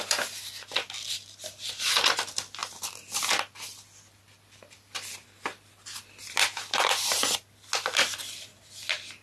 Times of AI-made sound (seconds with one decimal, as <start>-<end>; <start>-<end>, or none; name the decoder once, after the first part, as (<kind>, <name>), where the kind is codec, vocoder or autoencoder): 2.6-7.1 (vocoder, BigVGAN v2)